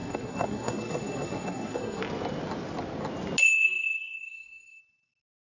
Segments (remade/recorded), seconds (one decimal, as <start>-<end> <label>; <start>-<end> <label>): 0.0-2.0 remade; 2.0-3.4 recorded; 3.4-4.8 remade; 4.8-5.4 recorded